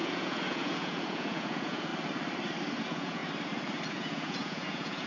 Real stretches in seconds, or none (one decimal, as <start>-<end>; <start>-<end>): 1.9-2.8; 3.2-3.9